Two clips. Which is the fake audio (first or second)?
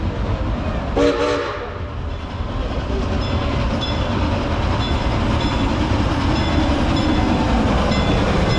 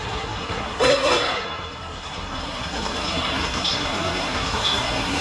second